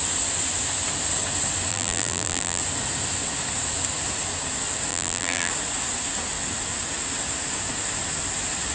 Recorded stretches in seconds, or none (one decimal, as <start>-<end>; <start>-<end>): 0.0-1.7; 2.6-4.9; 5.5-8.7